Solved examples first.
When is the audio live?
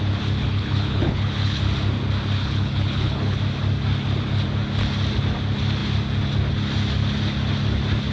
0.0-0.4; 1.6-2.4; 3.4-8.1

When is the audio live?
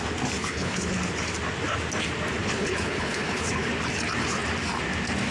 0.0-0.4; 1.0-2.4; 3.7-5.3